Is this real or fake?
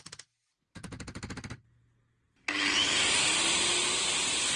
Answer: real